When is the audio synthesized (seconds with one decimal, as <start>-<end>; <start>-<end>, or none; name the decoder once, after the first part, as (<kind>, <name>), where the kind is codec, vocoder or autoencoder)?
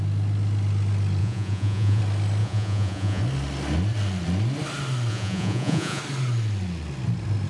1.2-2.0 (vocoder, Vocos); 2.4-3.2; 5.1-6.0